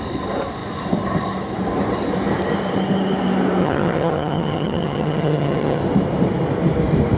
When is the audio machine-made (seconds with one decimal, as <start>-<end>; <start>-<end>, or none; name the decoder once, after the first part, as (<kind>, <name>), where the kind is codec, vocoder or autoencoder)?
3.6-5.8 (vocoder, HiFi-GAN)